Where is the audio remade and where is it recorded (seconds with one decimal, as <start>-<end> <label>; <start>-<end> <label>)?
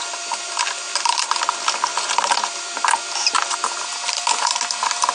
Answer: 0.0-5.1 recorded